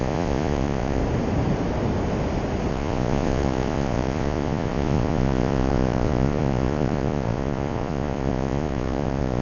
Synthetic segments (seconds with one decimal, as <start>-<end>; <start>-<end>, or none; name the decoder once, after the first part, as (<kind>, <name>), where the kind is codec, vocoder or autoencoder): 0.0-1.0 (vocoder, Vocos); 2.7-9.4